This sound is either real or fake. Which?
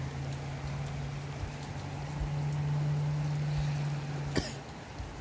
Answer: real